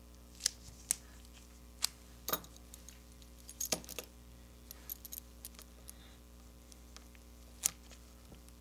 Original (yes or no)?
yes